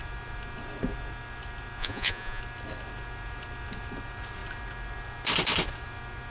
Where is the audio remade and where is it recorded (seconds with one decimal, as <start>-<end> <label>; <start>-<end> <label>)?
0.0-1.8 recorded; 1.8-2.4 remade; 2.4-6.3 recorded